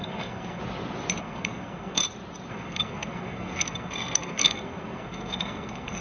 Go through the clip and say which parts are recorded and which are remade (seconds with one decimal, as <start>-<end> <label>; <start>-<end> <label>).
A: 0.0-0.6 remade; 0.6-1.2 recorded; 1.2-2.0 remade; 2.0-2.5 recorded; 2.5-6.0 remade